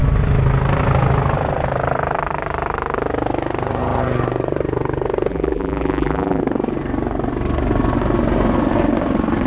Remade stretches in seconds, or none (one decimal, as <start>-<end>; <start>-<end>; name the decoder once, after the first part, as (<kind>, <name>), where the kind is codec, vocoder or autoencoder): 5.3-6.4 (vocoder, BigVGAN v2)